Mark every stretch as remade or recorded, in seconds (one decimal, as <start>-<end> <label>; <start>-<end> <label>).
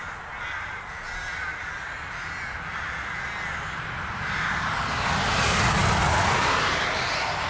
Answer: 0.0-7.5 recorded